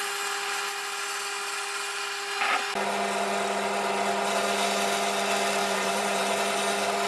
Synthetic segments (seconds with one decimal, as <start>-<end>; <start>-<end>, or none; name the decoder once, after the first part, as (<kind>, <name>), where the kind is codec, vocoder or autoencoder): 5.6-6.4 (vocoder, BigVGAN v2)